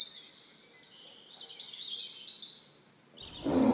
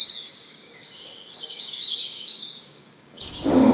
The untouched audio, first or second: first